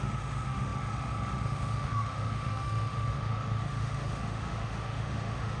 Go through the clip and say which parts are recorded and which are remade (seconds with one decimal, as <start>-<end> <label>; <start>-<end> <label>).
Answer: 0.0-5.6 remade